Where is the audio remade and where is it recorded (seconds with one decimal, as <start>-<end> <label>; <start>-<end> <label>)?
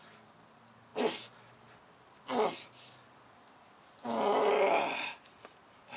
0.0-6.0 recorded